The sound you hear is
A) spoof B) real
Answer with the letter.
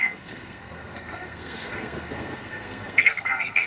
A